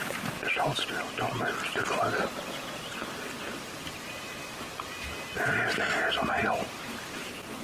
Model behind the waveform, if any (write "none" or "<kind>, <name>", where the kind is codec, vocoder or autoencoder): none